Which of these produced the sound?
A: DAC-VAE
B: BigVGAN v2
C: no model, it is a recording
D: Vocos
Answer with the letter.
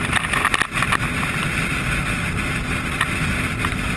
C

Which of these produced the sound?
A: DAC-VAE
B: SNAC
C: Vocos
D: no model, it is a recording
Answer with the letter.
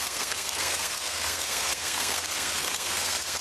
B